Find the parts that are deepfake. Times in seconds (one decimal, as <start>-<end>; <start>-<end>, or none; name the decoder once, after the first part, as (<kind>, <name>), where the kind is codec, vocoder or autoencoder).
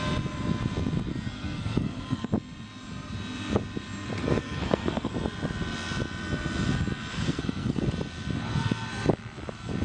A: 1.1-2.3 (codec, SNAC); 4.2-5.1; 7.1-7.8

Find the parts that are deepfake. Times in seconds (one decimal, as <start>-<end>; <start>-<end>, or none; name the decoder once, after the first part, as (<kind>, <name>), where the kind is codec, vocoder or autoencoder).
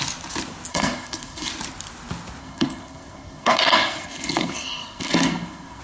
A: 0.7-1.5 (codec, SNAC); 2.4-5.8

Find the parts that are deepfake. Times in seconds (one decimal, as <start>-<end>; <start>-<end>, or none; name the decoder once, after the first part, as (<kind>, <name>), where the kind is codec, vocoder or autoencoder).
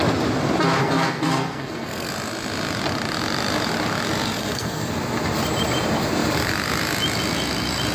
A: 0.8-2.1 (codec, SNAC); 4.4-4.9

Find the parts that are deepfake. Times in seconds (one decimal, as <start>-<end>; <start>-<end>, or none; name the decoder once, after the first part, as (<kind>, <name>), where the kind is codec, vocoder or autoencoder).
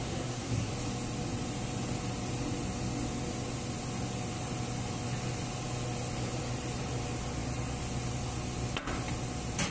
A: 0.0-0.7 (codec, SNAC)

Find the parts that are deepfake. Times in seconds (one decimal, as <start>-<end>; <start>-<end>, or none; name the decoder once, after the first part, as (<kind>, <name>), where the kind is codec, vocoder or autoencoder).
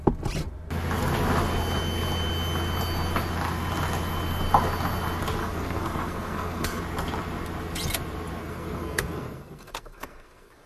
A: 5.4-6.8 (codec, SNAC); 8.4-10.7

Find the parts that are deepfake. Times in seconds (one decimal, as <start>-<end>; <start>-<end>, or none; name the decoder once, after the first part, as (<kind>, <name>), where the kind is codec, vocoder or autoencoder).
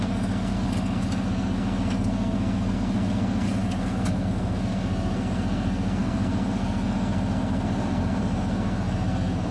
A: 0.0-9.5 (codec, SNAC)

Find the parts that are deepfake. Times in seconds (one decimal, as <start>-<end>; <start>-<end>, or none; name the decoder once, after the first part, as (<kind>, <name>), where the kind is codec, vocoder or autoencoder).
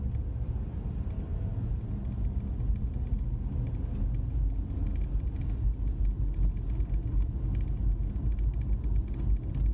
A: none